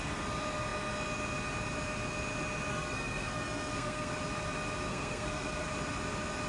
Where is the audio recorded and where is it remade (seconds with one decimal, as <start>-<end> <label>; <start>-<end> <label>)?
0.0-2.7 recorded; 2.7-4.1 remade; 4.1-4.9 recorded; 4.9-5.7 remade; 5.7-6.5 recorded